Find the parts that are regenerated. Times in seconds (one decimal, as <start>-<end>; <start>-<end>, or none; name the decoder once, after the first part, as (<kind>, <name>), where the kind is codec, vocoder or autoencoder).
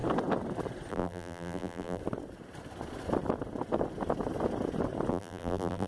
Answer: 0.9-2.0 (vocoder, BigVGAN v2); 5.1-5.9